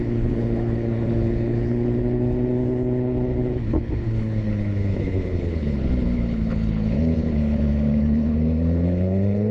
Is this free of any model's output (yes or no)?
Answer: no